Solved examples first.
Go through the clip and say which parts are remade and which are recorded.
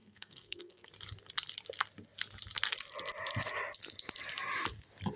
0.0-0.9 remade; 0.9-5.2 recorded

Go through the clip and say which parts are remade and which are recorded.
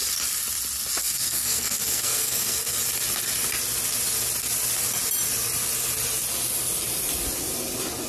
0.0-1.0 recorded; 1.0-2.8 remade; 2.8-8.1 recorded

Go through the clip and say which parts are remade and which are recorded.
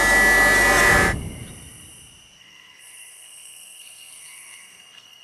0.0-2.4 recorded; 2.4-5.2 remade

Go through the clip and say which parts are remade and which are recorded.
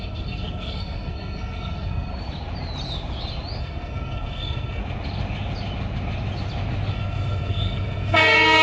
0.0-2.1 remade; 2.1-3.6 recorded; 3.6-4.8 remade; 4.8-6.9 recorded; 6.9-8.6 remade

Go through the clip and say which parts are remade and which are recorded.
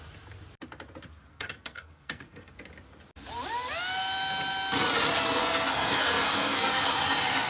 0.0-1.3 recorded; 1.3-2.5 remade; 2.5-5.4 recorded; 5.4-6.9 remade; 6.9-7.5 recorded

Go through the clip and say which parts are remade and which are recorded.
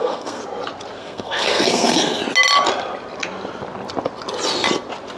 0.0-0.4 remade; 0.4-1.0 recorded; 1.0-2.2 remade; 2.2-5.2 recorded